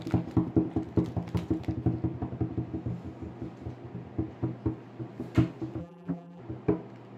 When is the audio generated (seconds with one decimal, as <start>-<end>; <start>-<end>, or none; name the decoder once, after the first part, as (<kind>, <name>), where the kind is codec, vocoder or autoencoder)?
5.8-6.4 (vocoder, BigVGAN v2)